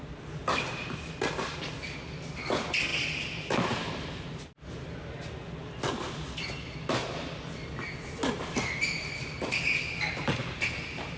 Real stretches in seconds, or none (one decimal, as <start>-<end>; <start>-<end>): 0.0-2.9; 4.2-11.2